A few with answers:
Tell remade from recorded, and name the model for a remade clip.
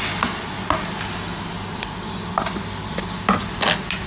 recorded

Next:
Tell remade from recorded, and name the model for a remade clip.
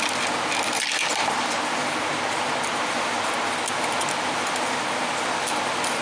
recorded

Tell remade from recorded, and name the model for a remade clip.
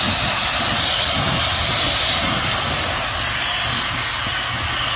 recorded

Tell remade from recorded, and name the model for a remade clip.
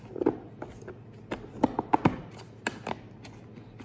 recorded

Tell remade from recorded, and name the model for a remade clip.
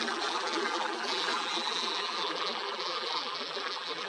remade, vocoder, BigVGAN v2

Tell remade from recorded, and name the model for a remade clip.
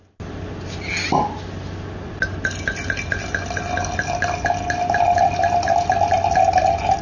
recorded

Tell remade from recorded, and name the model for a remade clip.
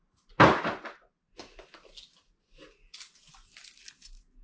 recorded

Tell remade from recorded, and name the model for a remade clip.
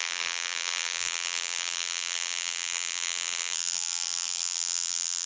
remade, vocoder, BigVGAN v2